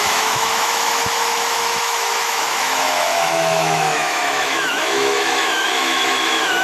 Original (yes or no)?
no